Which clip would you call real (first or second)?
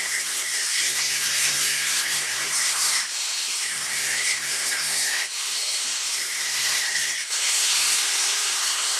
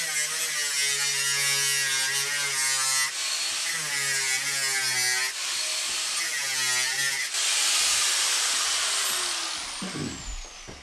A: second